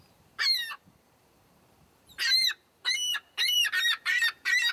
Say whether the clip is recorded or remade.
remade